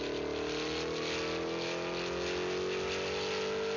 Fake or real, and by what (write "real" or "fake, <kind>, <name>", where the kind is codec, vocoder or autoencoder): real